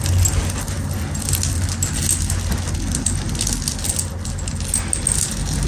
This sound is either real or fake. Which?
real